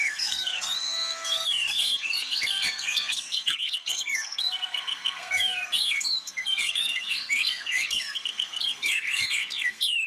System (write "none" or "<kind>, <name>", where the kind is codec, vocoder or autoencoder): codec, SNAC